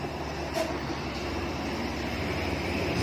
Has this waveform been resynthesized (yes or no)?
no